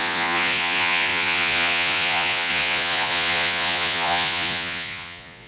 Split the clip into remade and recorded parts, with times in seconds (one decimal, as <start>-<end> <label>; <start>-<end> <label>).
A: 0.0-5.5 remade